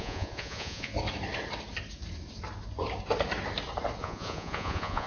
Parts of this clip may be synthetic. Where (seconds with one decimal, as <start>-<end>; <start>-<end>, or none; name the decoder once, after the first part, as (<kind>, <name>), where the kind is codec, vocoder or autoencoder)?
0.0-0.9 (vocoder, Vocos); 4.0-5.1